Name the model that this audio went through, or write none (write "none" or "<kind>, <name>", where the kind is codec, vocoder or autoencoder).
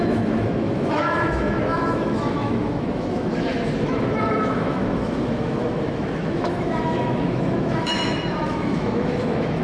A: autoencoder, DAC-VAE